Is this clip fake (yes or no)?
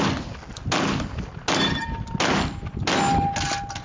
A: no